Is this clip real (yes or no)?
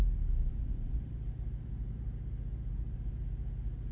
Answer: yes